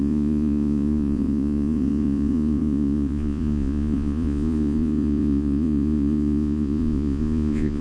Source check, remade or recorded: remade